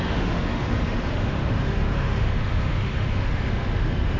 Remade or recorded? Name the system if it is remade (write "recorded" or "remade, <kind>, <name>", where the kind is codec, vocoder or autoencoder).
remade, autoencoder, DAC-VAE